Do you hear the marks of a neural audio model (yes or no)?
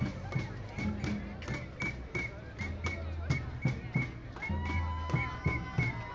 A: no